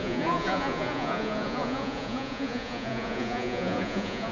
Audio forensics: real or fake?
fake